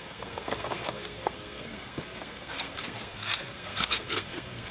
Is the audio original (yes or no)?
no